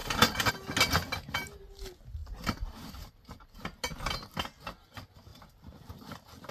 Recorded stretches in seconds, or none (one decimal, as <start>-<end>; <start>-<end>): 0.5-2.2; 2.9-5.3; 6.1-6.5